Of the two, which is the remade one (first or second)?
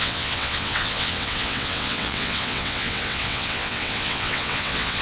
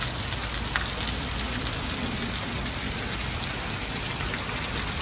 first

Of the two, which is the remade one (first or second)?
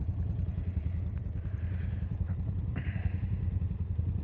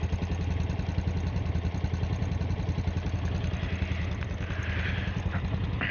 first